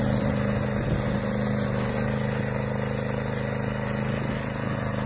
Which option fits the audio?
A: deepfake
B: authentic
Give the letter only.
B